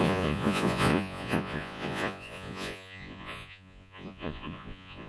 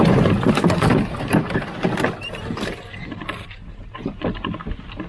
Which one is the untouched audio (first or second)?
second